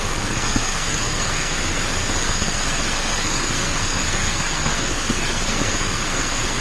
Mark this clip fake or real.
fake